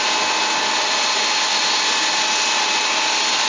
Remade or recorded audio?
recorded